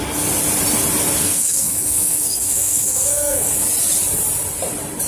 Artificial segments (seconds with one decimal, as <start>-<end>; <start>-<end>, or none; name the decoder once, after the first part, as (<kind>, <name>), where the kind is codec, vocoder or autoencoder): 1.2-3.5 (codec, SNAC)